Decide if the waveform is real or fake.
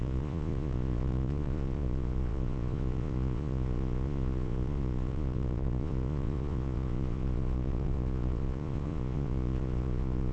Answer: fake